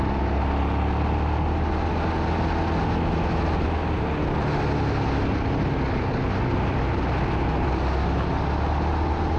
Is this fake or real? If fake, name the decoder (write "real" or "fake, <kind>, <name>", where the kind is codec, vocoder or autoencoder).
real